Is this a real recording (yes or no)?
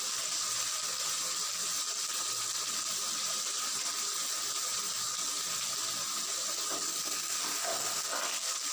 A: yes